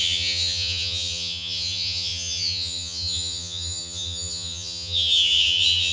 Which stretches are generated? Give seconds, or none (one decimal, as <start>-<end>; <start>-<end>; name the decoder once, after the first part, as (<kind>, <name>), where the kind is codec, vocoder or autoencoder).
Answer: 0.0-5.9 (vocoder, HiFi-GAN)